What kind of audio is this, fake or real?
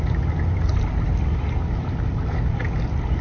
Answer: real